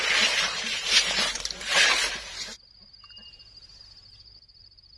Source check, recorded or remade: remade